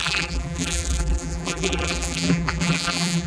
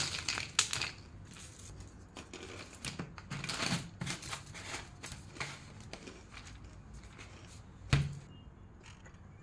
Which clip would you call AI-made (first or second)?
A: first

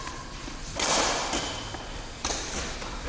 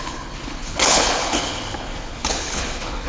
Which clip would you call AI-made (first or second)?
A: second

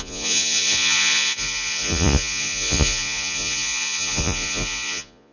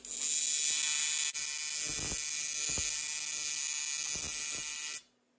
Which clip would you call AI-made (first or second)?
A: first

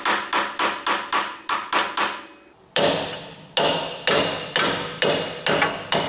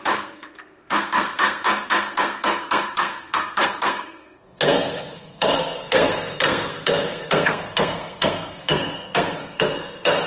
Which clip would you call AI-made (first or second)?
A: second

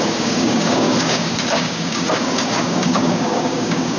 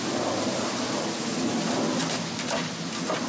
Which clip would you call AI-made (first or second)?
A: first